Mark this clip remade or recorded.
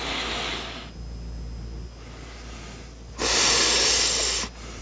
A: recorded